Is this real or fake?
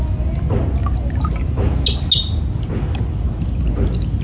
real